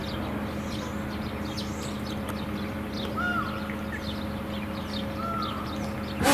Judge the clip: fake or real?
real